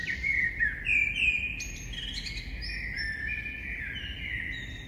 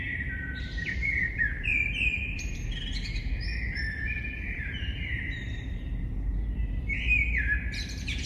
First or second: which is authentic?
first